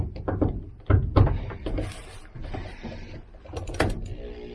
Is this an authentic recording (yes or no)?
yes